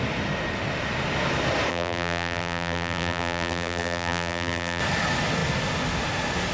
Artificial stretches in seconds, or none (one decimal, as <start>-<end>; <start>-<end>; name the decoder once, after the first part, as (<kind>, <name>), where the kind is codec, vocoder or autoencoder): 1.7-4.8 (vocoder, BigVGAN v2)